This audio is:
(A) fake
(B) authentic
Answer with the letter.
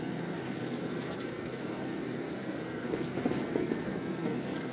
A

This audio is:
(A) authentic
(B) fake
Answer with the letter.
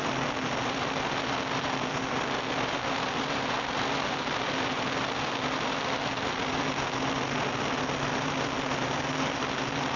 A